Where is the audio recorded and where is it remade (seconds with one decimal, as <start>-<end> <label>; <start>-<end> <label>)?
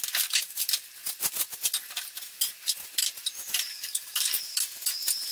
0.0-3.7 recorded; 3.7-4.4 remade; 4.4-5.3 recorded